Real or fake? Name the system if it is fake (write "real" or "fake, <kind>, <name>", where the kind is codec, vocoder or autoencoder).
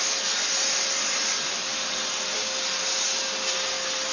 real